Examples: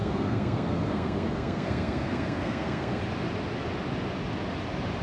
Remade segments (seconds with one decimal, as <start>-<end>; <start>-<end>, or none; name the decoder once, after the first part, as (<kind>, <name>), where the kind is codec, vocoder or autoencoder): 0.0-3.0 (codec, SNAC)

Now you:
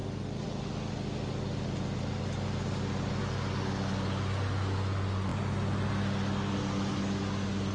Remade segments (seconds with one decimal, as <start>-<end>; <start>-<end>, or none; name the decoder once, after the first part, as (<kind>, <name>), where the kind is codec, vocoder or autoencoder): none

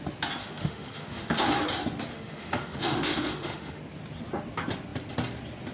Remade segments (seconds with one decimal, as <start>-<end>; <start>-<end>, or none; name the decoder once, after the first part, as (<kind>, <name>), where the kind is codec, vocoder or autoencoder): 0.4-1.5 (autoencoder, DAC-VAE); 2.1-3.8